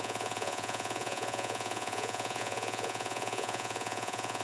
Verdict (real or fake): fake